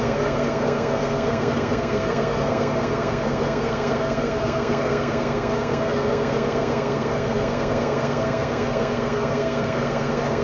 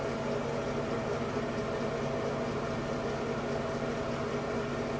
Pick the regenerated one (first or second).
first